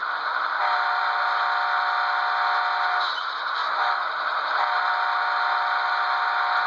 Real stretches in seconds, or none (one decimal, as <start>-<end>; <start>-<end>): 0.0-3.6; 4.1-6.7